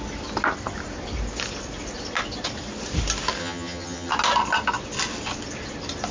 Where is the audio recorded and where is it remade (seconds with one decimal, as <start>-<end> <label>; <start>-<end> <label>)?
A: 0.0-3.4 recorded; 3.4-4.1 remade; 4.1-6.1 recorded

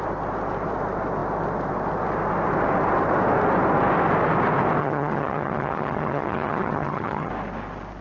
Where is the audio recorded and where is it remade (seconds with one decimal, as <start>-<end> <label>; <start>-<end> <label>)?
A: 0.0-4.8 recorded; 4.8-7.3 remade; 7.3-8.0 recorded

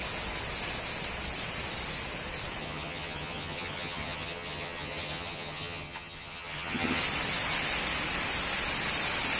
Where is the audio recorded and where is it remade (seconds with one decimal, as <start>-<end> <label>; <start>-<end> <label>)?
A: 0.0-2.6 recorded; 2.6-7.0 remade; 7.0-9.4 recorded

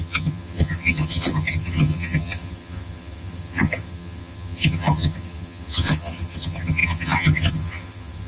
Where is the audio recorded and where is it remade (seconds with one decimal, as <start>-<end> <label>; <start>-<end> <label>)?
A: 0.0-8.3 remade